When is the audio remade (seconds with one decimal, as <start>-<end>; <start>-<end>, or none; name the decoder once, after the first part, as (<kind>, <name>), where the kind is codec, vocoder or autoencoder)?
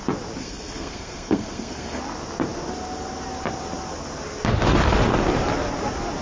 0.4-2.0 (codec, SNAC)